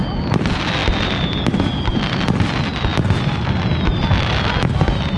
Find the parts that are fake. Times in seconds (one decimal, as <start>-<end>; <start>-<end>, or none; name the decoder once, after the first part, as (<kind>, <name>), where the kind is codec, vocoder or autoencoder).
none